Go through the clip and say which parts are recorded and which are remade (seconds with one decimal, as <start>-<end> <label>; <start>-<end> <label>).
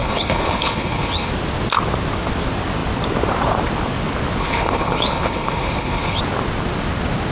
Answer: 0.0-1.3 remade; 1.3-4.4 recorded; 4.4-6.2 remade; 6.2-7.3 recorded